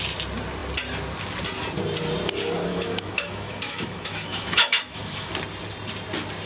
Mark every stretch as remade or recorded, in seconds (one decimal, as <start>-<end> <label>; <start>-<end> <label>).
0.0-2.7 recorded; 2.7-5.3 remade; 5.3-6.5 recorded